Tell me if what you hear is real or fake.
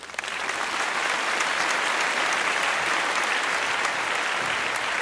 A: real